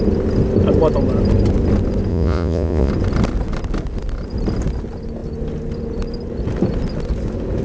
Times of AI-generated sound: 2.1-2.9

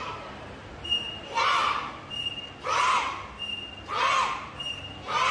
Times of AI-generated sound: 0.0-1.6; 4.4-5.3

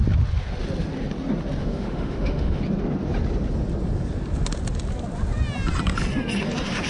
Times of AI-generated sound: 1.6-2.6

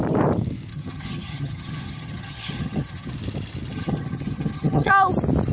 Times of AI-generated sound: 0.7-3.1; 3.7-4.9

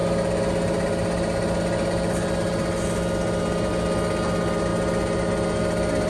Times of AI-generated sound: none